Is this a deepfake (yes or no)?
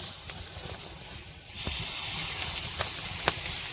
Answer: no